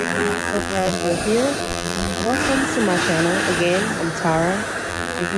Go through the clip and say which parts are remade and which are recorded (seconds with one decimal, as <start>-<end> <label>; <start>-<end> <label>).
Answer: 0.0-1.1 remade; 1.1-1.6 recorded; 1.6-2.4 remade; 2.4-4.9 recorded; 4.9-5.4 remade